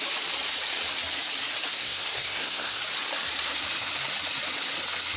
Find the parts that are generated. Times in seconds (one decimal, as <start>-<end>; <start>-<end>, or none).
1.7-2.8